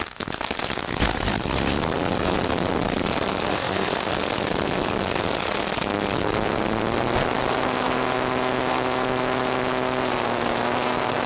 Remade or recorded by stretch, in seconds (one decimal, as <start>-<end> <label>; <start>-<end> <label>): 0.0-3.5 recorded; 3.5-4.1 remade; 4.1-11.3 recorded